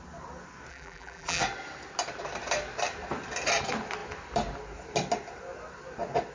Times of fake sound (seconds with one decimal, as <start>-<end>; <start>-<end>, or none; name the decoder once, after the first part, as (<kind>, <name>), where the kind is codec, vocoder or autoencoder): 0.7-1.4 (vocoder, BigVGAN v2)